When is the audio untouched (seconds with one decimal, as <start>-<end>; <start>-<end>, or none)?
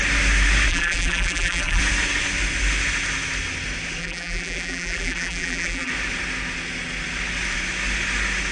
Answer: 0.0-0.7; 1.8-4.0; 5.9-8.5